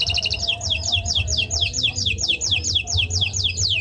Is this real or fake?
fake